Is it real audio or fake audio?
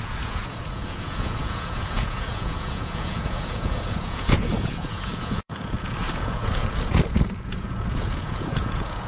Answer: fake